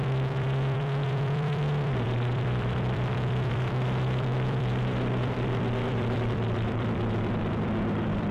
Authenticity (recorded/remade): remade